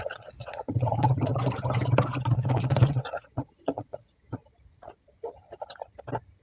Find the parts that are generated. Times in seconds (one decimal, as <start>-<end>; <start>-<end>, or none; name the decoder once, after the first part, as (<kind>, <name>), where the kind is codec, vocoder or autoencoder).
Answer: 0.0-1.3 (vocoder, Vocos); 2.3-4.4